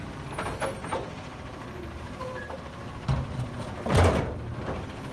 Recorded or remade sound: recorded